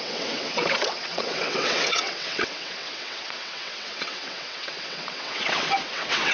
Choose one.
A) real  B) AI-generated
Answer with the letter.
B